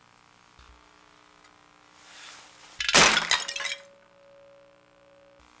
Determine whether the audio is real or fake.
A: real